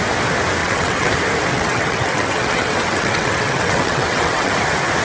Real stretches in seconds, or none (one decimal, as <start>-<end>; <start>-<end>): 0.0-0.6; 1.1-1.5; 4.5-5.0